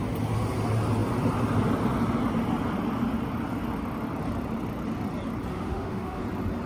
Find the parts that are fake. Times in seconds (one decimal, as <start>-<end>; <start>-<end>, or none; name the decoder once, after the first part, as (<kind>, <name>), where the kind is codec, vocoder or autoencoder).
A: 5.5-6.2 (autoencoder, DAC-VAE)